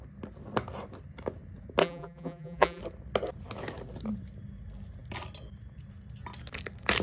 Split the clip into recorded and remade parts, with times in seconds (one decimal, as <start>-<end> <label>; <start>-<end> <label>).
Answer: 0.0-1.8 recorded; 1.8-2.8 remade; 2.8-7.0 recorded